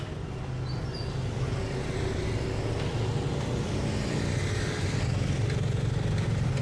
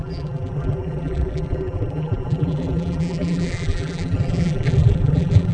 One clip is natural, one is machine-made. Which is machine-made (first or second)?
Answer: second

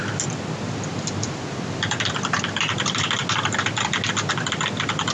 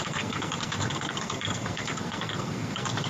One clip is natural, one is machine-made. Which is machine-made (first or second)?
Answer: second